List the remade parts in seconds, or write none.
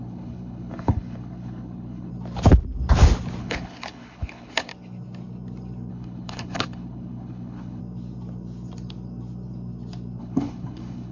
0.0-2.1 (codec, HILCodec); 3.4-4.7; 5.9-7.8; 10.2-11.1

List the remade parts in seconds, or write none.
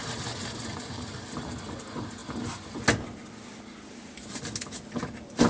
none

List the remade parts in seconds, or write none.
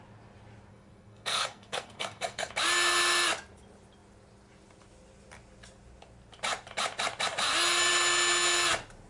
0.7-2.5 (codec, SNAC)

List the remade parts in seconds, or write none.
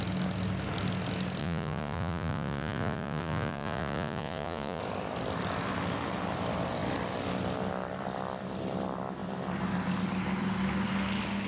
1.4-4.8 (vocoder, Vocos)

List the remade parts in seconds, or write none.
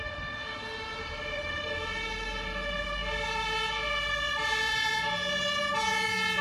1.0-1.7 (vocoder, BigVGAN v2)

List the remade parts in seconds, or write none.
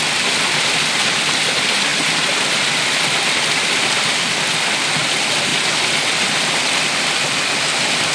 none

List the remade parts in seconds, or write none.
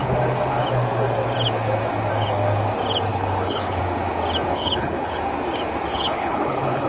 3.1-3.8 (codec, HILCodec); 4.5-5.2; 5.9-6.9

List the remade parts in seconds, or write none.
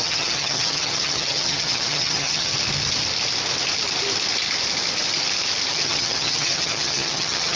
0.0-2.5 (vocoder, HiFi-GAN); 5.7-7.6